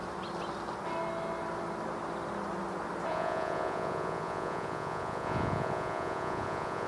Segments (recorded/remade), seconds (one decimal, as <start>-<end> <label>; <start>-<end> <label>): 0.0-3.1 recorded; 3.1-6.9 remade